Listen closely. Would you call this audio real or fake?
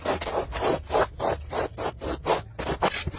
fake